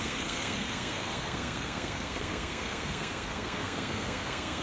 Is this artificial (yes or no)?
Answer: yes